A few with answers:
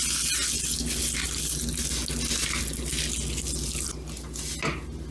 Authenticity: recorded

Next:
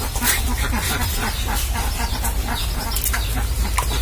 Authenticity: recorded